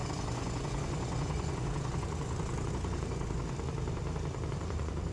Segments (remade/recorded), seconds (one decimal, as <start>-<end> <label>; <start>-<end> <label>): 0.0-3.4 remade; 3.4-4.5 recorded; 4.5-5.1 remade